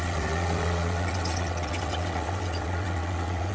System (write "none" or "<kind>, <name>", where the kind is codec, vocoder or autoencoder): vocoder, WaveNeXt